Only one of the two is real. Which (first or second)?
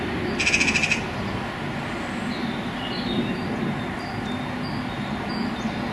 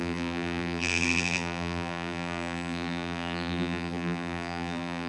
first